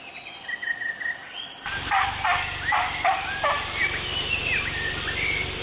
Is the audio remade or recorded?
recorded